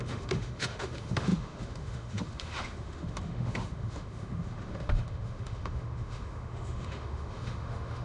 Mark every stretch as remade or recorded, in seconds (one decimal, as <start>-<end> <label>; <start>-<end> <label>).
0.0-8.0 remade